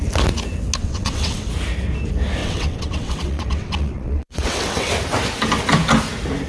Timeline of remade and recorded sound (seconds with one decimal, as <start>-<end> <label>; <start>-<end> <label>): 0.0-0.8 recorded; 0.8-1.5 remade; 1.5-2.4 recorded; 2.4-4.9 remade; 4.9-6.5 recorded